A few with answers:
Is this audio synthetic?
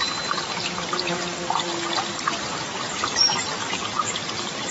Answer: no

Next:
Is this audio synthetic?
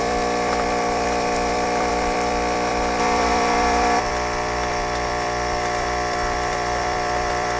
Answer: yes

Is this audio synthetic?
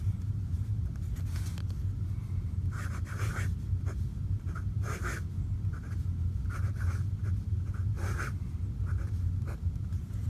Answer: no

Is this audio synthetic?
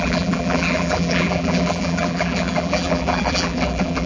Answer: yes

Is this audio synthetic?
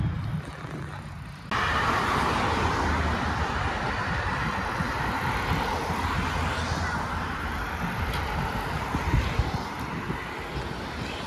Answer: no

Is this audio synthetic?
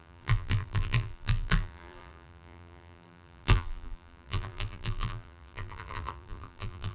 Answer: yes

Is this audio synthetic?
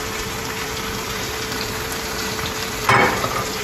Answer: yes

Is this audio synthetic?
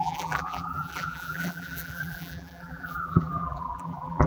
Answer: yes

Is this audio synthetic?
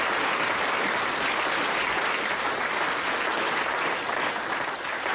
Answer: no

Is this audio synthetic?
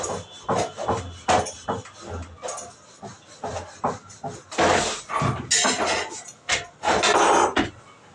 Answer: no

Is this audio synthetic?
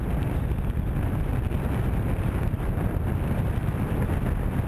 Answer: no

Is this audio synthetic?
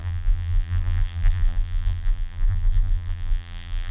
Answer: yes